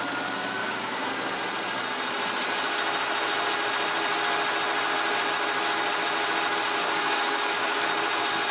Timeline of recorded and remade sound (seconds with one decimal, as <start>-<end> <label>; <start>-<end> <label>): 0.0-0.6 recorded; 0.6-1.1 remade; 1.1-6.8 recorded; 6.8-7.8 remade; 7.8-8.5 recorded